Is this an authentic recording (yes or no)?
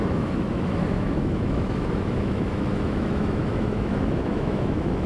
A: no